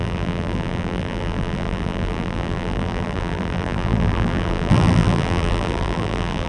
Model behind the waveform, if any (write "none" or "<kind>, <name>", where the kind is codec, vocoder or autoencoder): vocoder, BigVGAN v2